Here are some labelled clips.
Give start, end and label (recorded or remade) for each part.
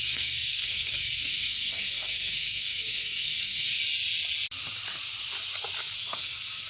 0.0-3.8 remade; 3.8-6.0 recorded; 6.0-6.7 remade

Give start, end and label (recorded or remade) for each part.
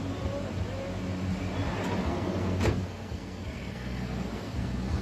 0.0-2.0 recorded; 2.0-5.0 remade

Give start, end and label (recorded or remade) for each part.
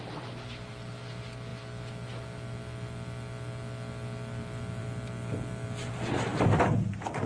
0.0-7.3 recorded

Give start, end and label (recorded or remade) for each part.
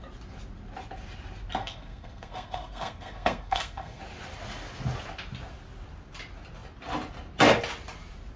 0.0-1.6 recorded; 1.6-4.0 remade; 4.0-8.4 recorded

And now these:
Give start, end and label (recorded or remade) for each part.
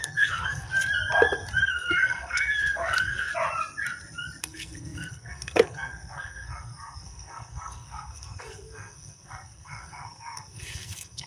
0.0-0.7 remade; 0.7-1.6 recorded; 1.6-3.3 remade; 3.3-4.4 recorded; 4.4-11.3 remade